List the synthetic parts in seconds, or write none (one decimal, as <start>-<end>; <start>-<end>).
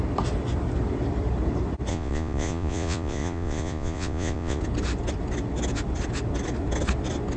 1.9-4.6